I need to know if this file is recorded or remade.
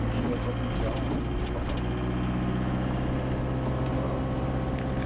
recorded